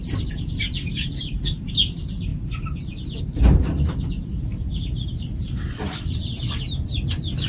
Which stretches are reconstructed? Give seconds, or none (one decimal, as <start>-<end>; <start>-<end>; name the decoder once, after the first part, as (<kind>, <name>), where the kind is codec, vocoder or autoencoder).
0.0-2.3 (vocoder, BigVGAN v2); 3.2-7.5